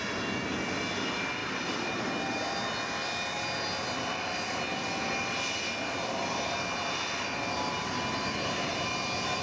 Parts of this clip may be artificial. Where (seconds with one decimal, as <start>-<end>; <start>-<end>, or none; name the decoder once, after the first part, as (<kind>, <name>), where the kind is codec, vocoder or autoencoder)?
1.4-2.1 (vocoder, BigVGAN v2)